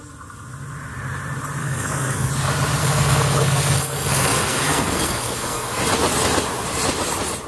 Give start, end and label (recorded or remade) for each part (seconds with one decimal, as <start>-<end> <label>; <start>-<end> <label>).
0.0-1.6 recorded; 1.6-2.3 remade; 2.3-2.8 recorded; 2.8-5.8 remade; 5.8-7.5 recorded